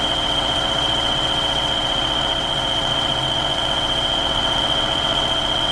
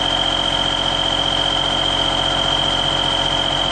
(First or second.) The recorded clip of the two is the second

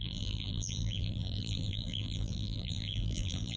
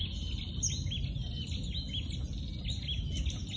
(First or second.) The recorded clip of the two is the second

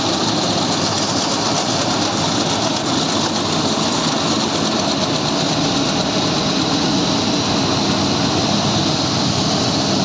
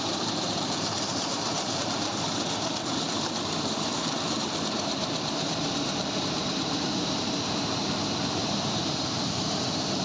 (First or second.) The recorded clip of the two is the first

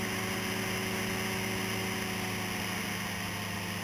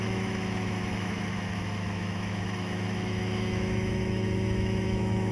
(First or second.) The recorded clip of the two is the first